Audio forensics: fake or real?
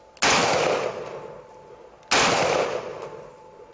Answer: real